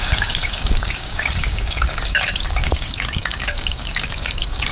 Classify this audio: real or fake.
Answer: fake